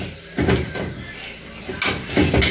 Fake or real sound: real